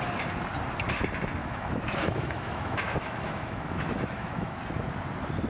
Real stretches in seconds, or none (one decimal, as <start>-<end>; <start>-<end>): 0.0-1.4; 4.6-5.5